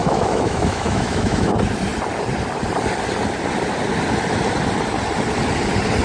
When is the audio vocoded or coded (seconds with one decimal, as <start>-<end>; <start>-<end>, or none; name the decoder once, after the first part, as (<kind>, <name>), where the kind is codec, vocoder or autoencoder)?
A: 0.0-1.5 (autoencoder, DAC-VAE)